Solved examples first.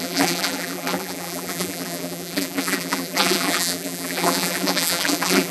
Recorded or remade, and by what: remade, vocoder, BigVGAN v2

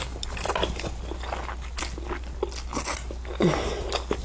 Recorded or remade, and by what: recorded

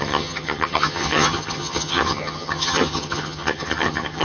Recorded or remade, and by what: remade, vocoder, HiFi-GAN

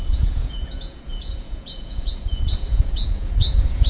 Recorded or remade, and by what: remade, vocoder, Vocos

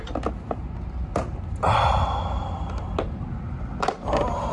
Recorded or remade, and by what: recorded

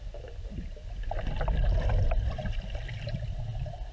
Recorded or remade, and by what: recorded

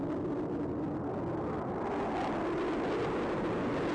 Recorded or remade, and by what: recorded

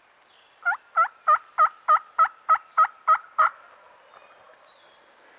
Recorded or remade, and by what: recorded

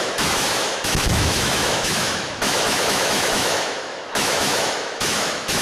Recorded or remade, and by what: remade, autoencoder, DAC-VAE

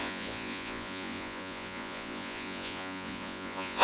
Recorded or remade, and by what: remade, vocoder, Vocos